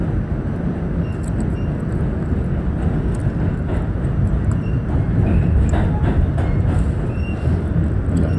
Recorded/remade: recorded